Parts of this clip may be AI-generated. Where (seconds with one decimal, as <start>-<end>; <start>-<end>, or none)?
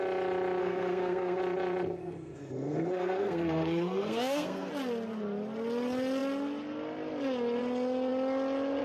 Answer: 0.6-1.4; 2.0-4.7